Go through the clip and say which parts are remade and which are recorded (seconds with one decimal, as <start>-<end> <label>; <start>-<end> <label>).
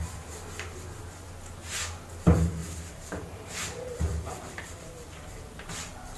0.0-2.6 recorded; 2.6-6.2 remade